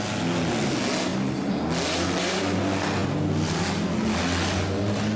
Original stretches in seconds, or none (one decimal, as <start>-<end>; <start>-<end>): 0.0-5.2